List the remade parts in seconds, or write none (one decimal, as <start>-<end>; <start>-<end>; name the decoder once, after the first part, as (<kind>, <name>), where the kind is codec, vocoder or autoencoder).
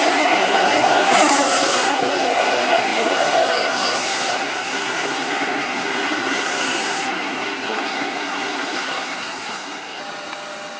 0.0-10.0 (codec, SNAC)